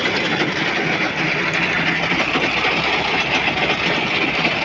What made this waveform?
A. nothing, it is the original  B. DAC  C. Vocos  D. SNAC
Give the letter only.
A